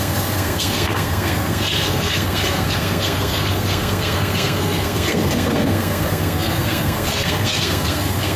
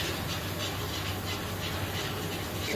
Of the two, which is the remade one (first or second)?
first